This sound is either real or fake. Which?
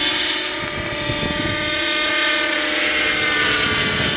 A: real